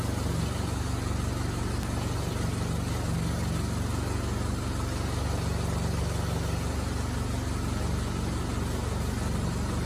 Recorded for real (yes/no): yes